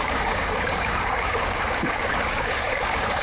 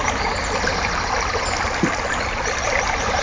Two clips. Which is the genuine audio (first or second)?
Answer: second